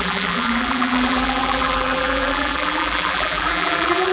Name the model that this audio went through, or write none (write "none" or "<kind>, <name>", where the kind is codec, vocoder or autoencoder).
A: vocoder, BigVGAN v2